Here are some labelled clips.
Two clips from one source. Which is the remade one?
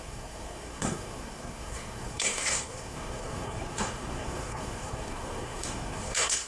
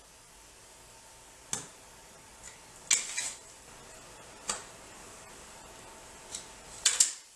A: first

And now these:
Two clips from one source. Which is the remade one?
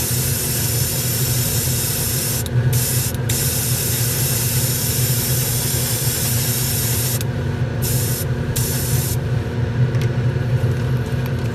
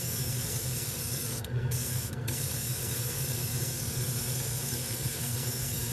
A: second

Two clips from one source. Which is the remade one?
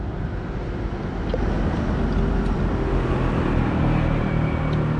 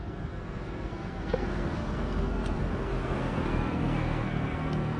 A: second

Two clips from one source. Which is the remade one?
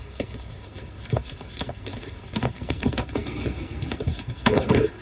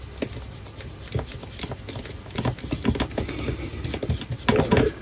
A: first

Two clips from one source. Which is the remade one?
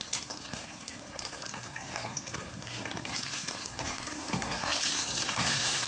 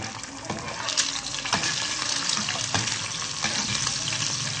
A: first